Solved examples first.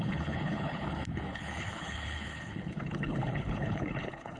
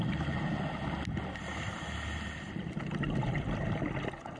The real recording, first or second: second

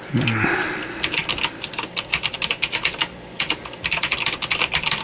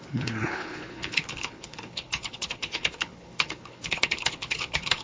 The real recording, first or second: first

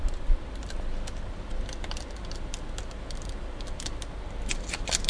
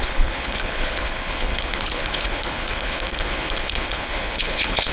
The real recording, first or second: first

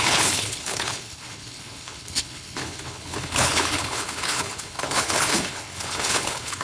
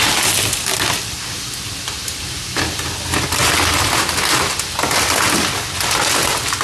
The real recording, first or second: second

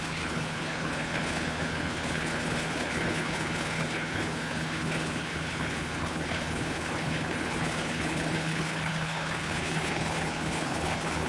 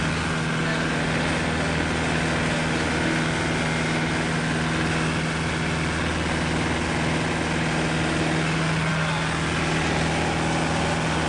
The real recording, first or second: second